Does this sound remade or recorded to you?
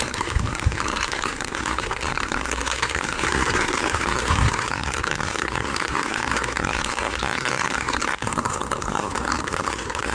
remade